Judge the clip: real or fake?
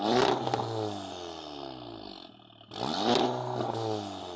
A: real